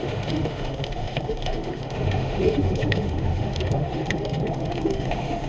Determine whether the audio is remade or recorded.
remade